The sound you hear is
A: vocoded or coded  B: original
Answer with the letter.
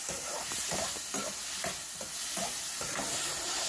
B